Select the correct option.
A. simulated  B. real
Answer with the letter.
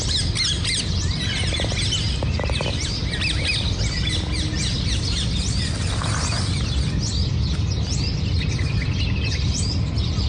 B